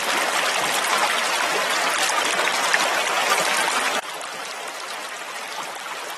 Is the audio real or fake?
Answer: real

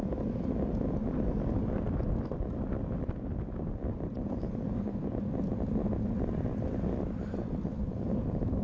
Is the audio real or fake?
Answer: real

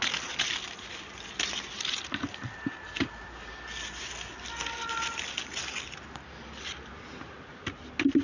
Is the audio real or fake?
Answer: real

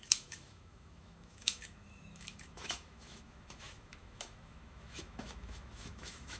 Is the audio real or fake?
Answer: fake